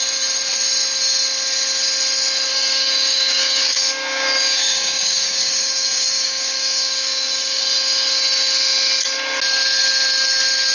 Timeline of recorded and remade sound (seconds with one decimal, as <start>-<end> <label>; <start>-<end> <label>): 0.0-2.5 recorded; 2.5-7.6 remade; 7.6-10.7 recorded